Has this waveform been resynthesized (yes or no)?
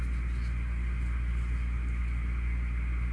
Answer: no